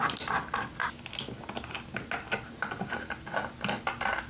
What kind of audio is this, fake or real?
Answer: real